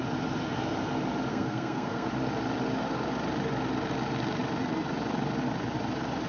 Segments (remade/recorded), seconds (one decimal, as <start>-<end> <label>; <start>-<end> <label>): 0.0-1.3 recorded; 1.3-2.1 remade; 2.1-6.3 recorded

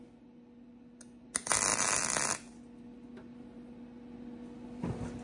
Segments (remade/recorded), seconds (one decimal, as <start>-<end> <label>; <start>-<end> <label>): 0.0-5.2 recorded

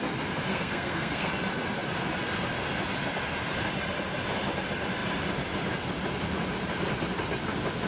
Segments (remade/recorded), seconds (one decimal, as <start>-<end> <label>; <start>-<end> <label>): 0.0-0.5 recorded; 0.5-1.3 remade; 1.3-7.9 recorded

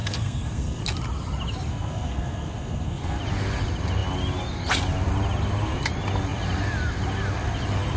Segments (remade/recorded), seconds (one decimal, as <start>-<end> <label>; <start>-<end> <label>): 0.0-0.8 remade; 0.8-1.7 recorded; 1.7-3.2 remade; 3.2-8.0 recorded

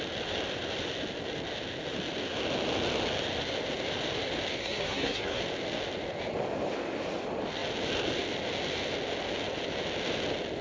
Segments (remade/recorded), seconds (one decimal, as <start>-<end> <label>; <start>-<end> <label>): 0.0-4.6 recorded; 4.6-5.4 remade; 5.4-10.6 recorded